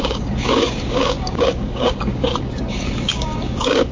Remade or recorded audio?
remade